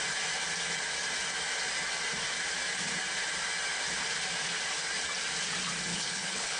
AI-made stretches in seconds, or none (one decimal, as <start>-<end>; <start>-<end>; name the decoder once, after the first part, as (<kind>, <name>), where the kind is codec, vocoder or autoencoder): 5.9-6.6 (codec, HILCodec)

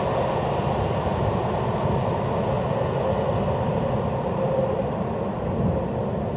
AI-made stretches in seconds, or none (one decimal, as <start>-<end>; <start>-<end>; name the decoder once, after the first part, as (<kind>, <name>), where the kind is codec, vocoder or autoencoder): none

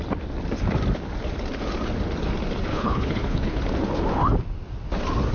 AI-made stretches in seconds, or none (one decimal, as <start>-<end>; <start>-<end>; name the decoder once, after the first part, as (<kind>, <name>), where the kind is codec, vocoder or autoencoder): 2.7-3.6 (codec, HILCodec)

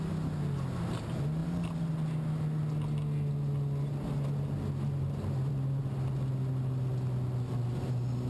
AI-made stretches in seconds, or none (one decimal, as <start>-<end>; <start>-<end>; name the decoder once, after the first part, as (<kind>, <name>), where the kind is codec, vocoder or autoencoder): none

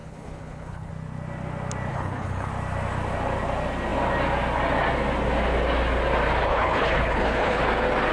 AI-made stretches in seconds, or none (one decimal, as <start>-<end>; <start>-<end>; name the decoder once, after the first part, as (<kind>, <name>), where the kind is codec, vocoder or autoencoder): 0.0-0.9 (codec, HILCodec); 1.9-2.5; 6.5-7.6